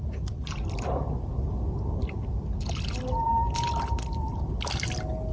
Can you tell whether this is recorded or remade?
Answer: recorded